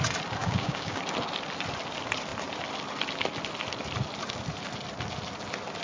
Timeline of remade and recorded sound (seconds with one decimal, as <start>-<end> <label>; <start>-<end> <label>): 0.0-0.4 recorded; 0.4-1.0 remade; 1.0-5.8 recorded

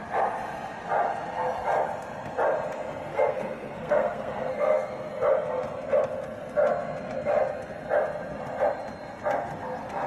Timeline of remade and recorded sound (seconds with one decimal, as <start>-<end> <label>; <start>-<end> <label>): 0.0-3.1 recorded; 3.1-5.1 remade; 5.1-10.1 recorded

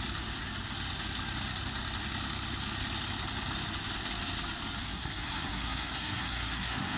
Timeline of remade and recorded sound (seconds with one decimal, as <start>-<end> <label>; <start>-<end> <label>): 0.0-4.8 recorded; 4.8-7.0 remade